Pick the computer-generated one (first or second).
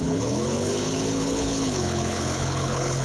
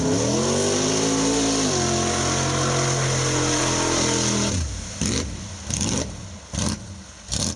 first